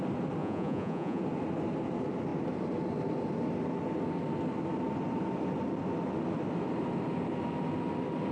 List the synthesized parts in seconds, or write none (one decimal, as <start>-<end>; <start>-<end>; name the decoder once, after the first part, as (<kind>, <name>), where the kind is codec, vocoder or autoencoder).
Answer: 0.4-1.2 (vocoder, Vocos)